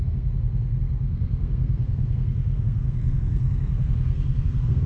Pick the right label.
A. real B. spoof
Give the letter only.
B